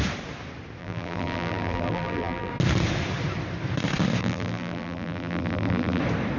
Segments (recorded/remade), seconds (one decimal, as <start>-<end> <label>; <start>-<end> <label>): 0.0-0.8 recorded; 0.8-2.5 remade; 2.5-4.2 recorded; 4.2-6.0 remade; 6.0-6.4 recorded